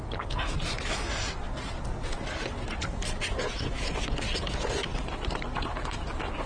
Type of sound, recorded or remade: recorded